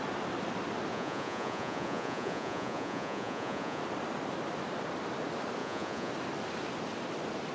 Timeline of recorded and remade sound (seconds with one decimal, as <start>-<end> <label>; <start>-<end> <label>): 0.0-0.9 recorded; 0.9-3.8 remade; 3.8-5.6 recorded; 5.6-6.1 remade; 6.1-7.5 recorded